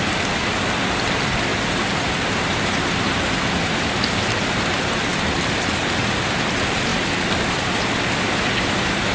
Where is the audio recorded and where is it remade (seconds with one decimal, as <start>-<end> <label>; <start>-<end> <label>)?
0.0-9.1 recorded